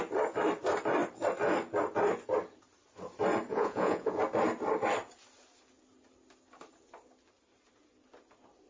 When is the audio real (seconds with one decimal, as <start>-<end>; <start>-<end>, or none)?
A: 0.0-3.5; 4.2-8.7

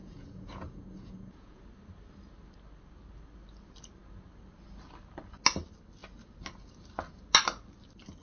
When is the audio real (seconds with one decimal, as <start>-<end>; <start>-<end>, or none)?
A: 1.6-8.2

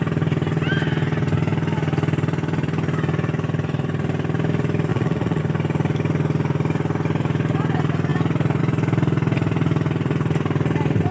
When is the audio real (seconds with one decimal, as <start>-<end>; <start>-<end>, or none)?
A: 0.0-4.9; 5.4-11.1

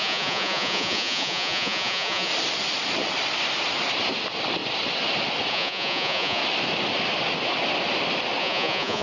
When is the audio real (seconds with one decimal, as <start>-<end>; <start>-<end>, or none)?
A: 2.3-5.5; 6.4-8.4

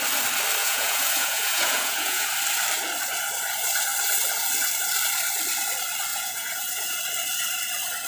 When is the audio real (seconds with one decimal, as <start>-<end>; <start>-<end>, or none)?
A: 0.0-0.6; 2.3-6.1; 7.0-8.1

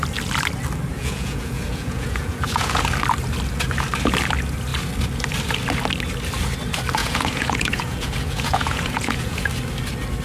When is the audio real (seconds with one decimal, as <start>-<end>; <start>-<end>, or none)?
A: 0.0-0.9; 2.8-7.0; 9.5-10.2